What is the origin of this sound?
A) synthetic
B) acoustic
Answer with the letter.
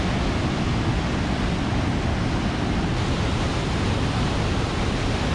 B